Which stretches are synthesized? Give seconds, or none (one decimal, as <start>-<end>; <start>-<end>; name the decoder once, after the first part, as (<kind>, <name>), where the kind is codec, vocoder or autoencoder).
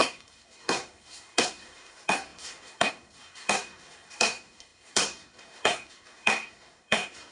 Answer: 0.0-7.3 (codec, SNAC)